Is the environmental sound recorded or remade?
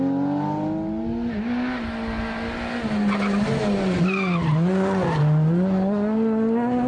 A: recorded